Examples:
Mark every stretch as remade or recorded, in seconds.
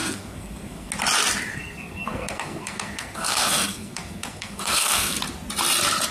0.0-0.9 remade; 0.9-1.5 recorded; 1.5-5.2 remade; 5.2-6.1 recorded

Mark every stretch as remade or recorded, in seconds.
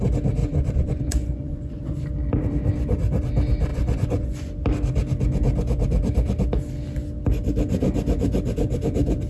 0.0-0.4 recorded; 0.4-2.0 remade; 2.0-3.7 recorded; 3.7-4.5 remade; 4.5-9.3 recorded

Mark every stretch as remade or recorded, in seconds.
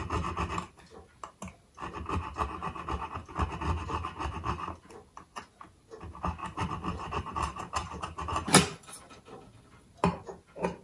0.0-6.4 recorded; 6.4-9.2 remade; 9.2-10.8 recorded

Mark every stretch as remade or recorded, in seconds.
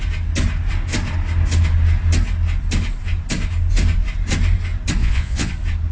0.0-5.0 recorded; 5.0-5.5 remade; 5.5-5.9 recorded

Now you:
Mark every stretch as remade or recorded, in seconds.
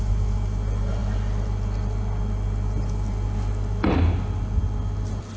0.0-5.4 recorded